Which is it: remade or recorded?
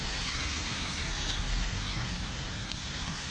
remade